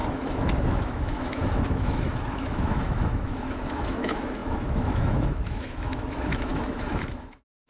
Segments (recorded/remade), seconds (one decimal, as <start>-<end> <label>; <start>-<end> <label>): 0.0-7.7 remade